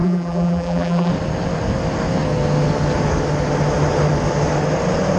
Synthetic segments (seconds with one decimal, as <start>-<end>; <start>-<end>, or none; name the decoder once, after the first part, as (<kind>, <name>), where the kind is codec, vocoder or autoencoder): 0.0-1.1 (vocoder, BigVGAN v2)